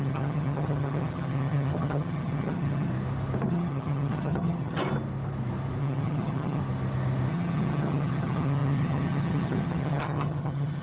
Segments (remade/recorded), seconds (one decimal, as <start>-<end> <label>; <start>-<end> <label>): 0.0-2.9 remade; 2.9-3.5 recorded; 3.5-4.8 remade; 4.8-5.8 recorded; 5.8-6.6 remade; 6.6-7.3 recorded; 7.3-10.8 remade